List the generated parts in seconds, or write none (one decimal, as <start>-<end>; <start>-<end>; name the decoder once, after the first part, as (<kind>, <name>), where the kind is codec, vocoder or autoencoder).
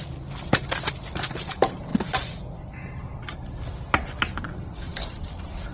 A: 1.9-5.3 (vocoder, BigVGAN v2)